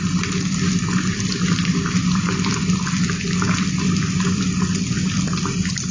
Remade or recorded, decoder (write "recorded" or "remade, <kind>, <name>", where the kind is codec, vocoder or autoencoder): recorded